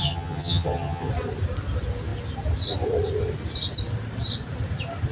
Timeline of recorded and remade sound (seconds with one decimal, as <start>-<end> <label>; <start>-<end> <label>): 0.0-1.1 remade; 1.1-5.1 recorded